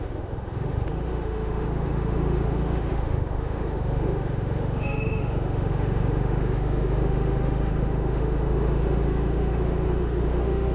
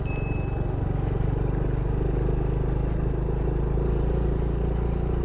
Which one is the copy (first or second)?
first